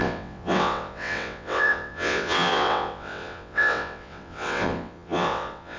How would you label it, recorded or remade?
remade